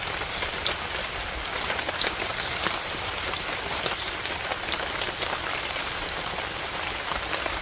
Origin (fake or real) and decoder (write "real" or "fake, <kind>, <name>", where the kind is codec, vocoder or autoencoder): real